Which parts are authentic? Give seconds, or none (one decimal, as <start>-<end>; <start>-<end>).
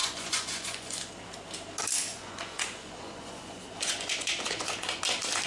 1.1-2.1; 5.0-5.5